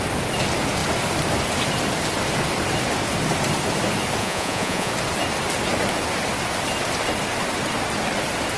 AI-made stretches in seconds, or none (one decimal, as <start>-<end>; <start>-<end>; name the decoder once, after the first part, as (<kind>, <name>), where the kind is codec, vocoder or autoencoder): 4.2-4.9 (vocoder, Vocos)